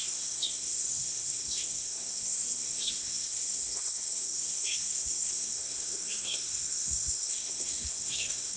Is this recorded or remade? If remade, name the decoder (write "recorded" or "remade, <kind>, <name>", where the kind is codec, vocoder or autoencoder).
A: remade, codec, SNAC